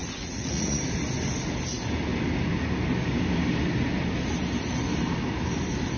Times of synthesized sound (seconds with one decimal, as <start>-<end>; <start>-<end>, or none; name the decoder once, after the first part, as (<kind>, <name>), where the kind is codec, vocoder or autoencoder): 0.0-0.8 (vocoder, Vocos)